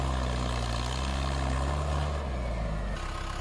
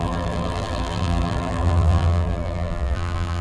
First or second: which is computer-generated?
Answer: second